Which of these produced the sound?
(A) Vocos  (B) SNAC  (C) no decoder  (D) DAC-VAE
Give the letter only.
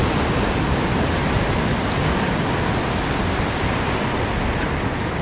C